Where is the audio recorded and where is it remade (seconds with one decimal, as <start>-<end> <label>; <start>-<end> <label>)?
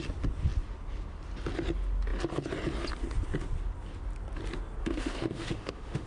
0.0-4.8 recorded; 4.8-6.1 remade